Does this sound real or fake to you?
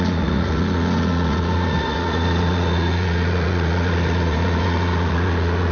fake